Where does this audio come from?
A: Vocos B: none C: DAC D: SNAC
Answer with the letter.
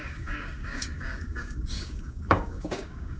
C